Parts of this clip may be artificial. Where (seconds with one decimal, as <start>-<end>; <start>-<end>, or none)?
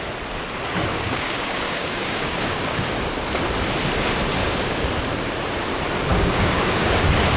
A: 0.9-2.9; 4.4-4.9; 6.1-7.0